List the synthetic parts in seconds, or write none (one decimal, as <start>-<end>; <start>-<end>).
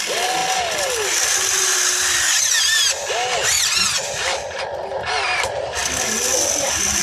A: none